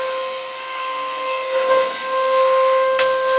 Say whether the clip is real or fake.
fake